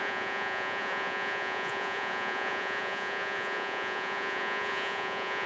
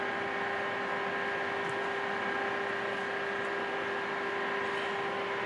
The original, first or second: second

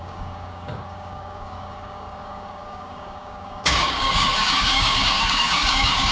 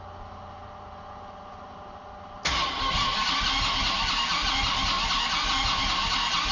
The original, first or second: second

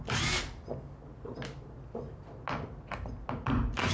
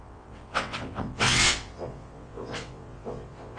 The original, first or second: first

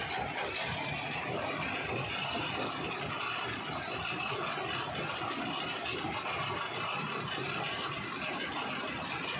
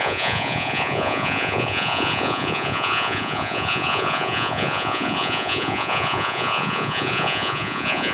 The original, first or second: first